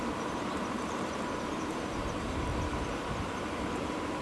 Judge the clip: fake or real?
fake